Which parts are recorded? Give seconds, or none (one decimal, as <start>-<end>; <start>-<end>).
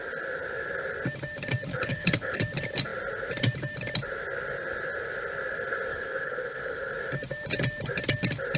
0.0-1.7; 2.4-5.9; 6.9-8.6